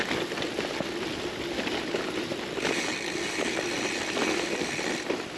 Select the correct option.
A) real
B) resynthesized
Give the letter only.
A